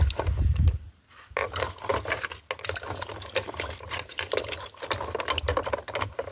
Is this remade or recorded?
recorded